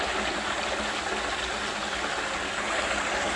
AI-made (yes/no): no